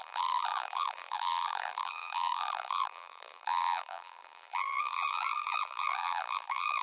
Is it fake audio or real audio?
fake